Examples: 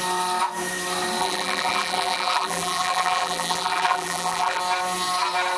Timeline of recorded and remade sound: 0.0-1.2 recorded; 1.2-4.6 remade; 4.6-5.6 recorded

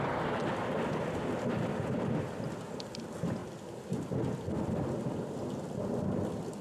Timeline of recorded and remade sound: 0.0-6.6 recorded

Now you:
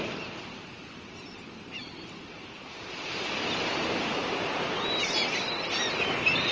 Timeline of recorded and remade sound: 0.0-4.2 remade; 4.2-6.5 recorded

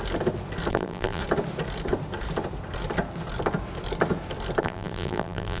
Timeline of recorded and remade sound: 0.0-0.7 recorded; 0.7-1.2 remade; 1.2-4.6 recorded; 4.6-5.6 remade